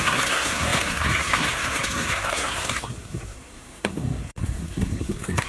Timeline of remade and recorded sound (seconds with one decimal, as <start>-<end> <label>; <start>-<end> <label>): 0.0-5.5 remade